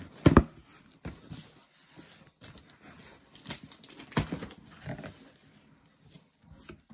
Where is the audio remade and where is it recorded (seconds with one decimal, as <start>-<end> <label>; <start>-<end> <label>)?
0.0-6.9 recorded